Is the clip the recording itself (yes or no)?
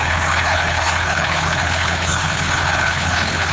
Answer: no